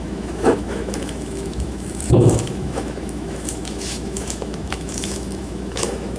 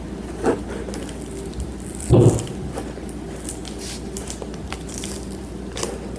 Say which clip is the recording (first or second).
second